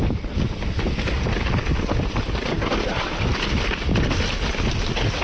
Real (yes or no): yes